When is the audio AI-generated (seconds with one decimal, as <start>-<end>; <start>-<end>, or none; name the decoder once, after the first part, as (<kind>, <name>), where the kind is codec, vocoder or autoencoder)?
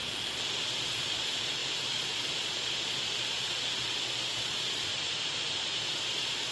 0.0-4.9 (vocoder, Vocos); 5.8-6.5